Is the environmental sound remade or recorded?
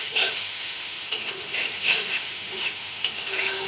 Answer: remade